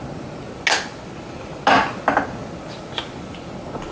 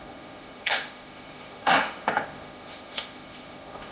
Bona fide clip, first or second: first